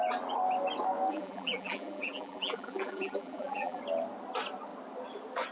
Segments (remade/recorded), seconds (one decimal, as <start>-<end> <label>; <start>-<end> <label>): 0.0-1.1 recorded; 1.1-3.8 remade; 3.8-5.5 recorded